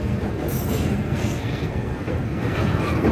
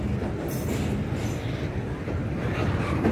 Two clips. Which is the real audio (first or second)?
second